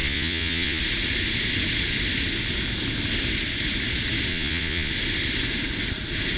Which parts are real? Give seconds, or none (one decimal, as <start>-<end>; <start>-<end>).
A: 0.8-4.3; 4.9-6.4